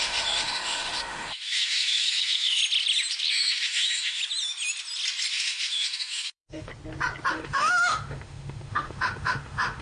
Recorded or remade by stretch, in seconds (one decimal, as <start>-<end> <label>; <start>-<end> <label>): 0.0-2.6 remade; 2.6-3.3 recorded; 3.3-4.2 remade; 4.2-5.3 recorded; 5.3-6.7 remade; 6.7-7.3 recorded; 7.3-9.8 remade

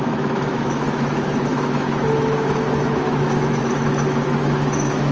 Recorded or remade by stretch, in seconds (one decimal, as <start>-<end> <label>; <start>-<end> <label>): 0.0-5.1 remade

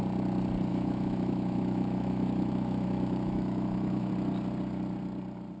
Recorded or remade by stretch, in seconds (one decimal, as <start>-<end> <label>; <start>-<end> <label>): 0.0-0.7 recorded; 0.7-4.1 remade; 4.1-5.6 recorded

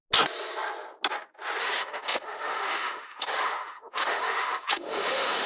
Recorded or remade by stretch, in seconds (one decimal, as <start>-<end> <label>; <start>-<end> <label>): 0.0-1.6 recorded; 1.6-5.5 remade

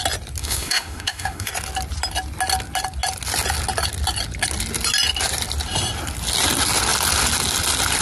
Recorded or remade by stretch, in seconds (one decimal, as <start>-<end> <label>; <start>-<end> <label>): 0.0-0.4 recorded; 0.4-1.5 remade; 1.5-8.0 recorded

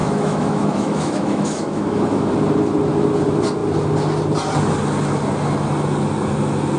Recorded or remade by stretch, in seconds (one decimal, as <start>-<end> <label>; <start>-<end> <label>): 0.0-2.3 remade; 2.3-6.8 recorded

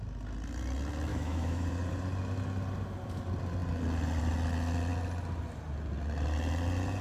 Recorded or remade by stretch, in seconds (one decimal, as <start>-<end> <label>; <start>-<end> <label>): 0.0-1.1 recorded; 1.1-1.7 remade; 1.7-7.0 recorded

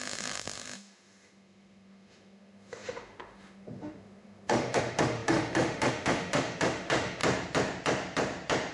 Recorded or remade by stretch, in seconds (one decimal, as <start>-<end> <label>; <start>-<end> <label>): 0.0-7.2 remade; 7.2-8.7 recorded